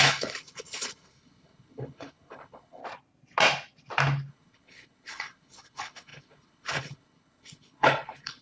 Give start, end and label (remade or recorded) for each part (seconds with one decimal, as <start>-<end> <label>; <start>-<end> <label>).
0.0-2.8 remade; 2.8-4.3 recorded; 4.3-8.4 remade